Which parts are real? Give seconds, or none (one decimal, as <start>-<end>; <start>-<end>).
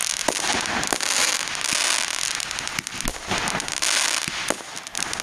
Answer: 0.0-5.2